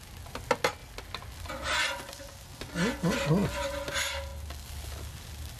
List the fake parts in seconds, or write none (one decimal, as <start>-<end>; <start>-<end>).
none